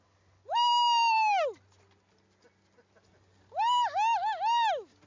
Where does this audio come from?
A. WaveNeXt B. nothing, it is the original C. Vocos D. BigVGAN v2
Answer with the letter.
B